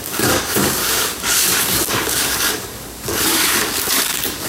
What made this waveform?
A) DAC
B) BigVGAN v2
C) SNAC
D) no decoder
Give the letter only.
A